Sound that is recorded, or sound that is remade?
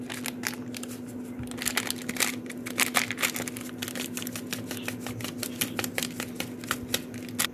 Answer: recorded